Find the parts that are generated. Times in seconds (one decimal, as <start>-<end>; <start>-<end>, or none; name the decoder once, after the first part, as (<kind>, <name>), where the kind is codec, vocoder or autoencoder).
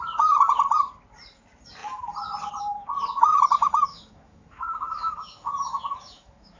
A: 3.9-6.6 (autoencoder, DAC-VAE)